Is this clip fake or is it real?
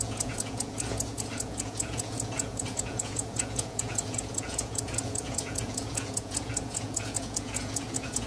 fake